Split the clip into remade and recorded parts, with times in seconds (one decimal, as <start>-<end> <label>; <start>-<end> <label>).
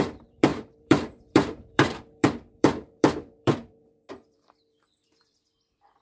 0.0-6.0 remade